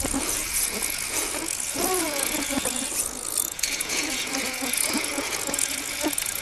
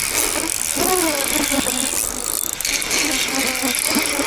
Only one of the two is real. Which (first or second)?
second